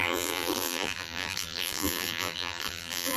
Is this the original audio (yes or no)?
no